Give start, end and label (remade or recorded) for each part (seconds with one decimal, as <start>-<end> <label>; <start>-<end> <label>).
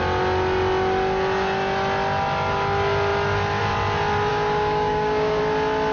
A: 0.0-4.3 recorded; 4.3-5.4 remade; 5.4-5.9 recorded